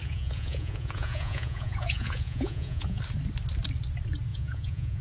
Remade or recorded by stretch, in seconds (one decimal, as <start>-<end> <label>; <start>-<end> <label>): 0.0-3.0 remade; 3.0-4.3 recorded; 4.3-5.0 remade